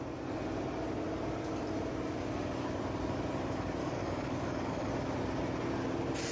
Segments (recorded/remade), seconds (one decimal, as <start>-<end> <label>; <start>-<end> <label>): 0.0-3.8 recorded; 3.8-4.9 remade; 4.9-6.3 recorded